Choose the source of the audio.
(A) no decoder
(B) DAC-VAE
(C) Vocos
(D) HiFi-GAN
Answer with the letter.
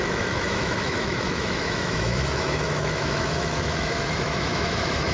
B